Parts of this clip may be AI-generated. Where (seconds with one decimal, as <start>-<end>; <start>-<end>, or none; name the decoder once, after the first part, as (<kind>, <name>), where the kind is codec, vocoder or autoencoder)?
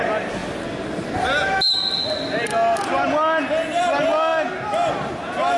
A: none